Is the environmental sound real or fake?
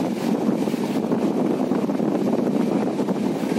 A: real